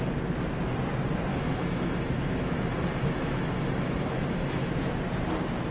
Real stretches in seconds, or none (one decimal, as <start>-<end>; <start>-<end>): 0.0-1.3; 4.7-5.7